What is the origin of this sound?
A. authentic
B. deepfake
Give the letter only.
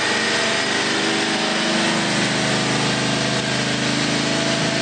A